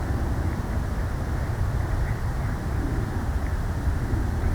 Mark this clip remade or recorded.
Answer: recorded